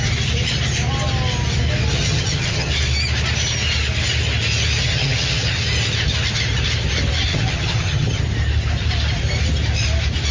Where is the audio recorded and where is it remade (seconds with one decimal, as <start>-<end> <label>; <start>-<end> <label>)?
0.0-1.9 recorded; 1.9-2.7 remade; 2.7-4.8 recorded; 4.8-5.6 remade; 5.6-7.3 recorded; 7.3-8.2 remade; 8.2-10.3 recorded